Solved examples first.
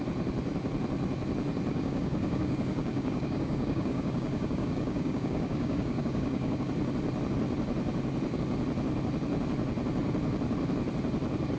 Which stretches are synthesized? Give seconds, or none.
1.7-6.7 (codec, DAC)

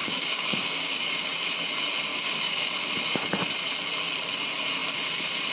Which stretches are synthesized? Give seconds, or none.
0.0-1.3 (codec, DAC); 2.1-2.9